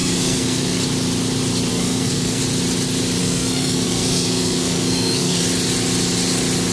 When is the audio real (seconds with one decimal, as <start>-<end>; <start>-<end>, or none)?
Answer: 0.8-1.7; 2.4-3.2; 5.4-6.7